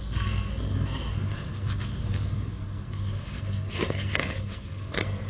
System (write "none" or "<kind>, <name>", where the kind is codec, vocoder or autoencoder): codec, SNAC